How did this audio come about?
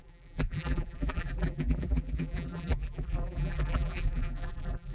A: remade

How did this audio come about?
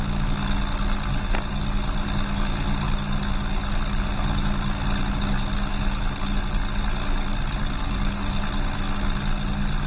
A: recorded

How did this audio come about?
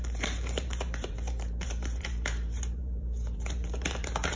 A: remade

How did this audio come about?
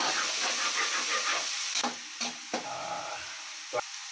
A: recorded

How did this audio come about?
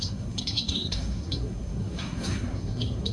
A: remade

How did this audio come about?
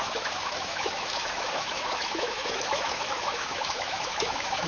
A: remade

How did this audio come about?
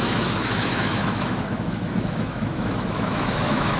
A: remade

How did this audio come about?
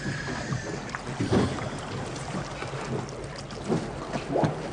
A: recorded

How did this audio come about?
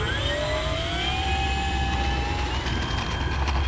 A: recorded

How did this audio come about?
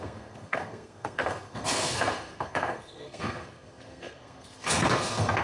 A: remade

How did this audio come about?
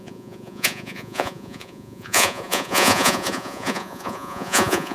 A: remade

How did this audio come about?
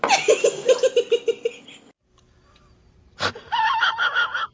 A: recorded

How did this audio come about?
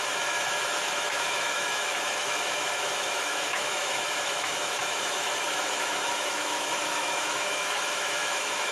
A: remade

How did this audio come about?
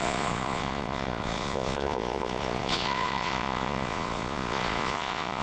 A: remade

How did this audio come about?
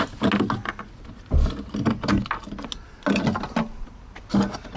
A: recorded